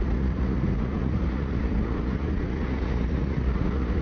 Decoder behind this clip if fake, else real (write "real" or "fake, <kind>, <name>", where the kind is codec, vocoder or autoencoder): fake, vocoder, Vocos